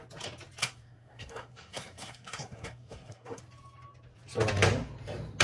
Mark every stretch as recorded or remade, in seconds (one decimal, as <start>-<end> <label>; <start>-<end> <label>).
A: 0.0-0.6 recorded; 0.6-3.4 remade; 3.4-5.4 recorded

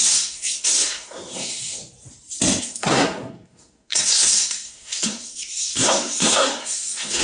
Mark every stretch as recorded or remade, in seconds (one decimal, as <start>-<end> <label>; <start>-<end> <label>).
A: 0.0-1.8 remade; 1.8-2.6 recorded; 2.6-7.2 remade

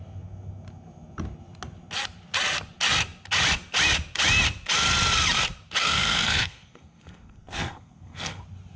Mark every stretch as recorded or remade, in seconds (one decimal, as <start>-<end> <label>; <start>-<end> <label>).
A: 0.0-5.8 recorded; 5.8-8.4 remade; 8.4-8.8 recorded

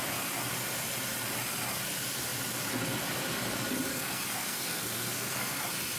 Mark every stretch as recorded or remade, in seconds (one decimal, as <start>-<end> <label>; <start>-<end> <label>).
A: 0.0-3.9 recorded; 3.9-5.6 remade; 5.6-6.0 recorded